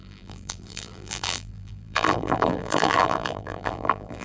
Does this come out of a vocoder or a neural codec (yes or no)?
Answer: yes